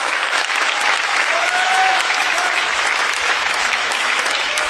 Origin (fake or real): fake